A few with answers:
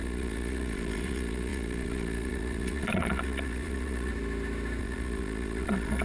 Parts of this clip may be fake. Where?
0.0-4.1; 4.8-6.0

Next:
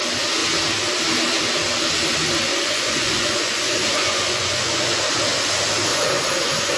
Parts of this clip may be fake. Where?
2.5-5.2; 5.9-6.8

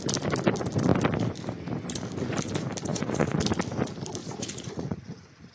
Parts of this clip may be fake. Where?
2.9-3.4; 4.2-5.5

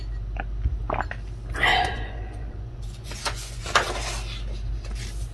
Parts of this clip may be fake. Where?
1.7-3.6

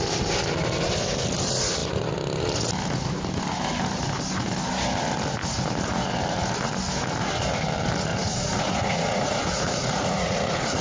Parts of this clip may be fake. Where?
8.1-10.8

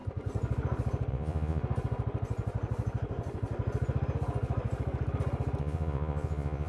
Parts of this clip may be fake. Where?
1.1-1.6; 5.6-6.7